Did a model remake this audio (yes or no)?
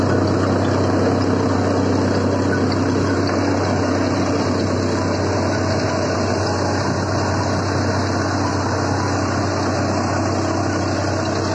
no